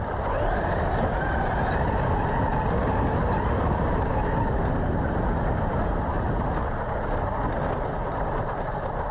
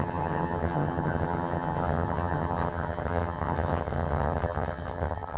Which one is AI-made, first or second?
second